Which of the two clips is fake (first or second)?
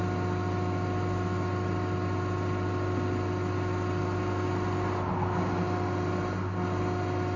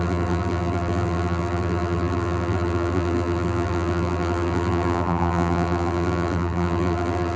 second